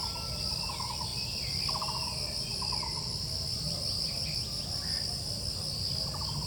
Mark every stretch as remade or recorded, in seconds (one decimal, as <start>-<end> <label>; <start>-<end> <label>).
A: 0.0-6.5 recorded

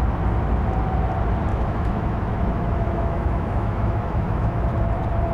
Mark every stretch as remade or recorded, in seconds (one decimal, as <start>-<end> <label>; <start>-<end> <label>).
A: 0.0-1.5 recorded; 1.5-4.7 remade; 4.7-5.3 recorded

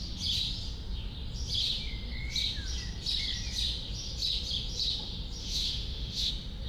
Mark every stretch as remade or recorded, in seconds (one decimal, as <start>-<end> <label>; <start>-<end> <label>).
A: 0.0-5.4 recorded; 5.4-6.3 remade; 6.3-6.7 recorded

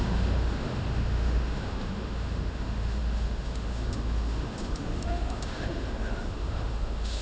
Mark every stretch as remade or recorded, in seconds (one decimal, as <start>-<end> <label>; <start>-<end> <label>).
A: 0.0-7.2 remade

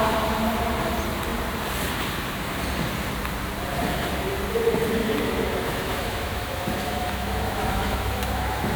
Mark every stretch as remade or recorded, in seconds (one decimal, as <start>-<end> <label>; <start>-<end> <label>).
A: 0.0-5.0 recorded; 5.0-8.8 remade